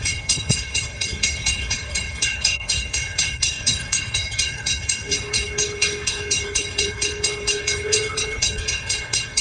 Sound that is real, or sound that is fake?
fake